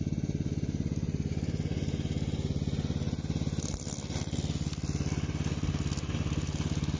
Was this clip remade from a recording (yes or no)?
no